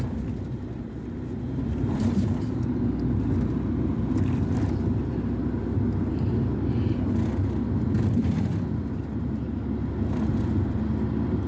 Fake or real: real